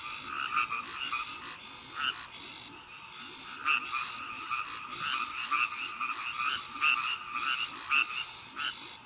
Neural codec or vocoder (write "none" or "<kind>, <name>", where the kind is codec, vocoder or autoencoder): none